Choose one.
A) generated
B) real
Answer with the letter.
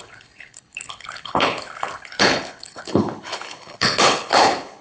A